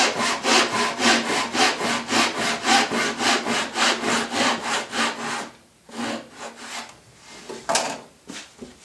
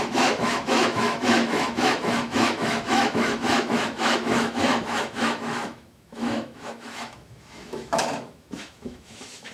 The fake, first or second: second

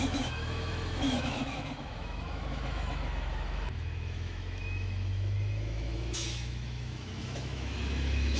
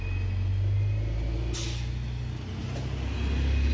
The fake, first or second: first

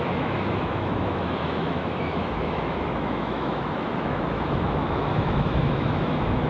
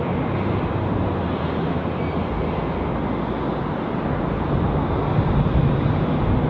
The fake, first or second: first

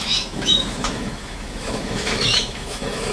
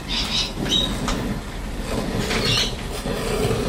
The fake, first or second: first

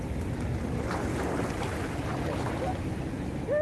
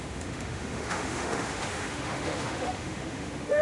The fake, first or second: second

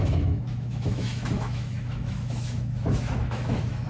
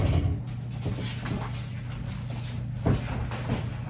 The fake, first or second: first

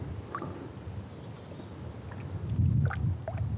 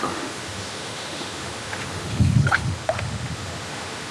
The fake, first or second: second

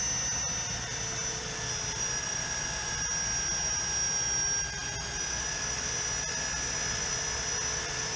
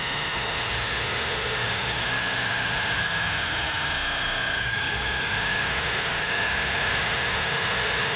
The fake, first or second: second